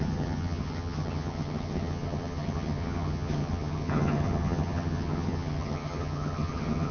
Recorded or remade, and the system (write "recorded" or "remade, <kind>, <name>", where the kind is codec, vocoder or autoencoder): remade, vocoder, HiFi-GAN